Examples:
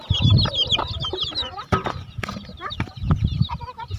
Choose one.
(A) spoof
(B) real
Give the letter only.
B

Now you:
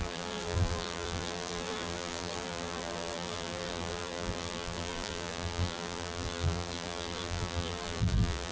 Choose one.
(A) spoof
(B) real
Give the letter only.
A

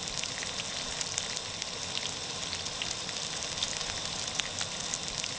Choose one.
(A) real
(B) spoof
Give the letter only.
A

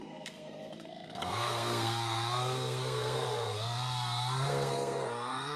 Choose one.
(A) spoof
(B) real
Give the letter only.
A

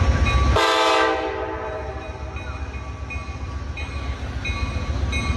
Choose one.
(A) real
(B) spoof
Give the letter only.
A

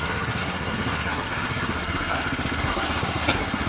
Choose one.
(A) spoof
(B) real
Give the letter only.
A